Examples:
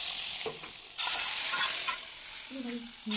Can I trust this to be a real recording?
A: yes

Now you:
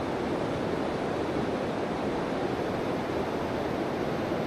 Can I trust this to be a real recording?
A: yes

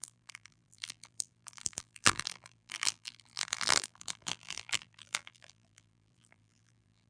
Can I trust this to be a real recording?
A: no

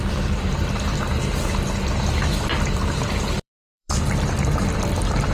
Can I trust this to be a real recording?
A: no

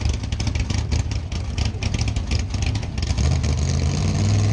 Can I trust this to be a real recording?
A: yes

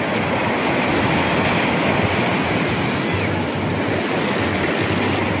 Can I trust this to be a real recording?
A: yes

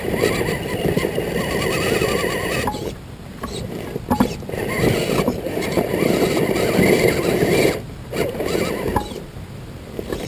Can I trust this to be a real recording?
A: no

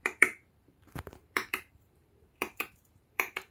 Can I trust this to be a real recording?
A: no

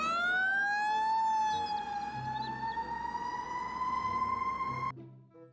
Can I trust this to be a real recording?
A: yes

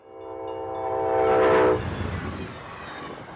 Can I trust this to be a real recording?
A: yes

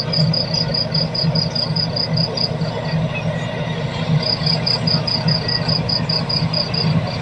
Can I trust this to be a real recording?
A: yes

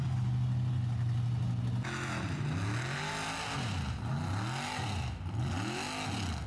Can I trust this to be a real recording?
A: yes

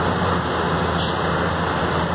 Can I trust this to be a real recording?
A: yes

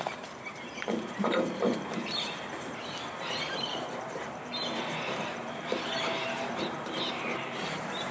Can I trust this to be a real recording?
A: no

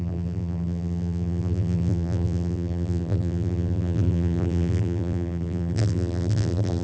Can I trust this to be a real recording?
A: no